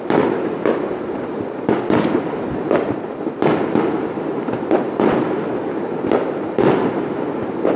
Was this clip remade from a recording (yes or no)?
no